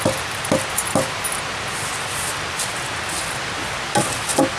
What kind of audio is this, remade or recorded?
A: recorded